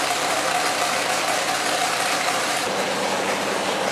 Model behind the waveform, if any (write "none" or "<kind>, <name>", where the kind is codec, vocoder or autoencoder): vocoder, BigVGAN v2